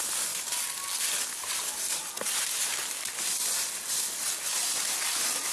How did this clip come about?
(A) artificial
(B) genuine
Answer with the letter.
B